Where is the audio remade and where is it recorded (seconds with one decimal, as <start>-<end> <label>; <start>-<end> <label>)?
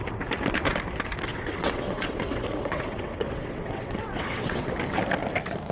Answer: 0.0-1.3 recorded; 1.3-4.7 remade; 4.7-5.7 recorded